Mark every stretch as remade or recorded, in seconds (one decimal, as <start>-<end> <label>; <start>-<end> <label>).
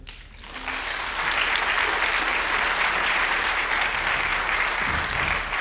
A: 0.0-2.3 recorded; 2.3-3.7 remade; 3.7-4.3 recorded; 4.3-4.9 remade; 4.9-5.6 recorded